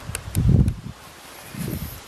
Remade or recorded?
recorded